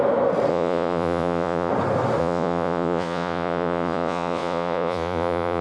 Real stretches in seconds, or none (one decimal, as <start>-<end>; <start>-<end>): 0.0-0.5; 1.7-2.2